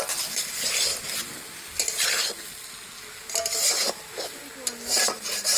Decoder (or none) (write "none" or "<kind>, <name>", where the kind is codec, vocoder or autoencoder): none